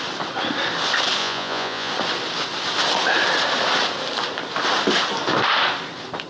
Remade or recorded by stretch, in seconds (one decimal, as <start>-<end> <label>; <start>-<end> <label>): 0.0-1.2 recorded; 1.2-1.9 remade; 1.9-6.3 recorded